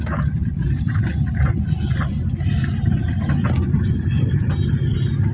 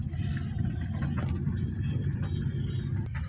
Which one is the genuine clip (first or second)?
second